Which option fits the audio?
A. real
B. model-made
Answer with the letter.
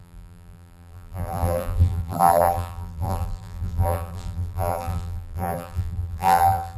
B